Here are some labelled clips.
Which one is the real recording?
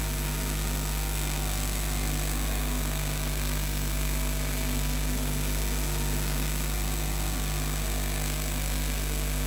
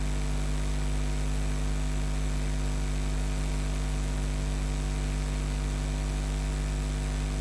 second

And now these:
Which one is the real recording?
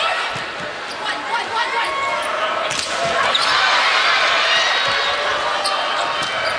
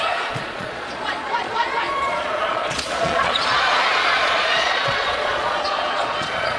first